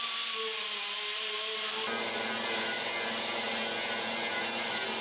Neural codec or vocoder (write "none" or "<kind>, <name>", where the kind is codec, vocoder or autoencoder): none